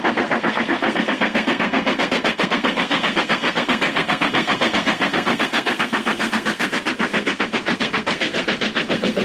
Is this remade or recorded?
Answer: remade